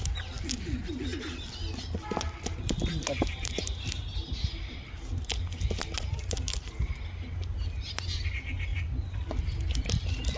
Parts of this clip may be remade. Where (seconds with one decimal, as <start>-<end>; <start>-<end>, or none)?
2.9-4.3; 8.7-9.3